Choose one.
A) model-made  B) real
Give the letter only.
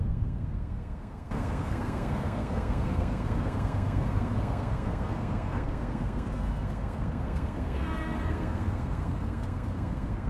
A